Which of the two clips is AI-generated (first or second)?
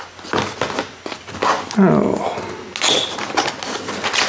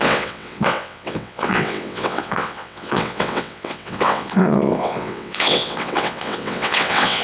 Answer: second